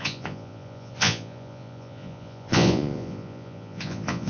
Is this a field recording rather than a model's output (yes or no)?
no